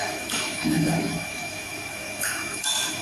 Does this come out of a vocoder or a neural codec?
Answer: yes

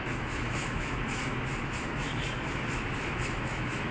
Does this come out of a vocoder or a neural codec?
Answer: yes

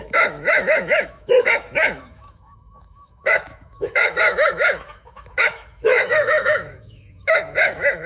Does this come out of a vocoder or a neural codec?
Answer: yes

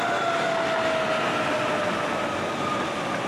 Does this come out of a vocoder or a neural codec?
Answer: no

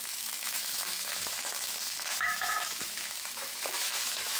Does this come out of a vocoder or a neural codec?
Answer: yes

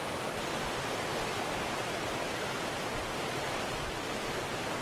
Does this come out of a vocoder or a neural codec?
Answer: no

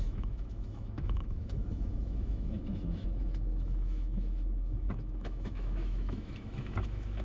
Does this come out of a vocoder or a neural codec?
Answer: yes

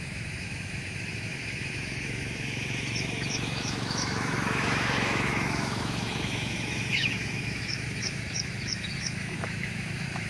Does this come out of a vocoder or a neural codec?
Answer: yes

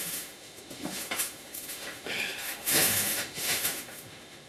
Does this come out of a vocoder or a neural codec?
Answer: yes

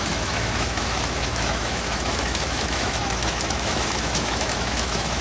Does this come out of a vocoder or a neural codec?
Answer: yes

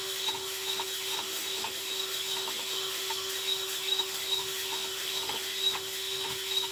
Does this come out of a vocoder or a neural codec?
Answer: yes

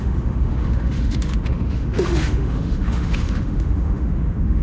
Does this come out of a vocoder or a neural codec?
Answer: yes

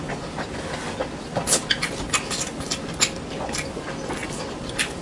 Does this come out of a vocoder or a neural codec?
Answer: no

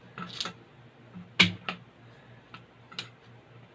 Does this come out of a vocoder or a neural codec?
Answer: no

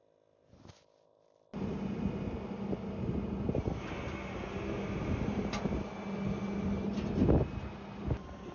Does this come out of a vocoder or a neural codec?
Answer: no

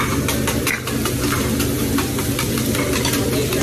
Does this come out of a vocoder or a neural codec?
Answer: no